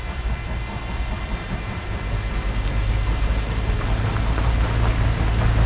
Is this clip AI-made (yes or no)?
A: no